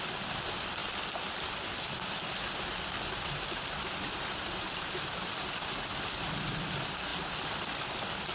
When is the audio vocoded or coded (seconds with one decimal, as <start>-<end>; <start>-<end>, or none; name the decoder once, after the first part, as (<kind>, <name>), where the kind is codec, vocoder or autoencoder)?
none